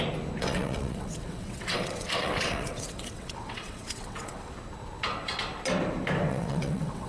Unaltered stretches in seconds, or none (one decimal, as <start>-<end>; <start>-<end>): 0.0-0.4; 4.5-6.3